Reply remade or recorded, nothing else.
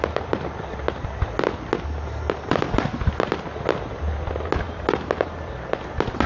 recorded